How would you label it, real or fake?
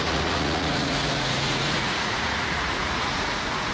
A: fake